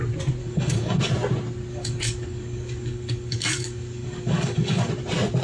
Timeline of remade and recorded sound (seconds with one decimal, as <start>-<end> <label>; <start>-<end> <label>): 0.0-0.4 recorded; 0.4-1.1 remade; 1.1-1.7 recorded; 1.7-4.9 remade; 4.9-5.4 recorded